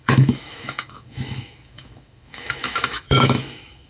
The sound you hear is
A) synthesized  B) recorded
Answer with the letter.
A